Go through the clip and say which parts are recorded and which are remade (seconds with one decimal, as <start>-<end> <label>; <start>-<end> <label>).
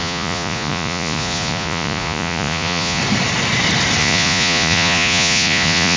0.0-3.0 remade; 3.0-4.0 recorded; 4.0-6.0 remade